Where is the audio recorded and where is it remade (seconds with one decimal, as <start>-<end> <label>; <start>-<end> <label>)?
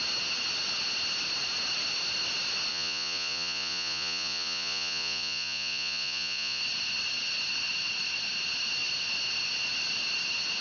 0.0-2.7 recorded; 2.7-6.6 remade; 6.6-10.6 recorded